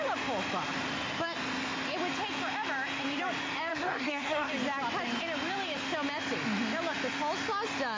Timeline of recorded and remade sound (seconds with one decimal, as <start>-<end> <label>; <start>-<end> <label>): 0.0-3.7 recorded; 3.7-4.5 remade; 4.5-8.0 recorded